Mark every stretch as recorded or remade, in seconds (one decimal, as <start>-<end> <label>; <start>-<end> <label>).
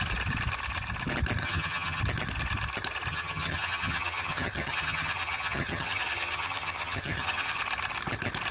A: 0.0-1.4 recorded; 1.4-2.0 remade; 2.0-3.1 recorded; 3.1-7.6 remade; 7.6-8.5 recorded